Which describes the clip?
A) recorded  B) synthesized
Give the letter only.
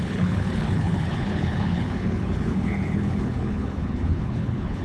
B